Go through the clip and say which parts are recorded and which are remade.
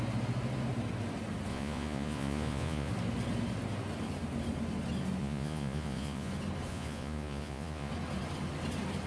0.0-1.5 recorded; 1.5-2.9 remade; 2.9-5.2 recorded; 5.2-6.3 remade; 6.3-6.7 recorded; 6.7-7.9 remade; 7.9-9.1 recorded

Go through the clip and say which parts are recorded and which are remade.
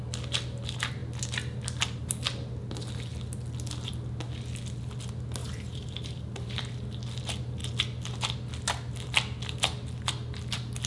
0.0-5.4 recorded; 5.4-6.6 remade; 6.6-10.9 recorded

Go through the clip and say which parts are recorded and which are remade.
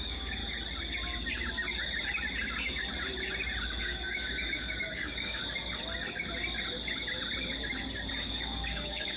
0.0-0.4 remade; 0.4-3.8 recorded; 3.8-5.4 remade; 5.4-8.1 recorded; 8.1-9.2 remade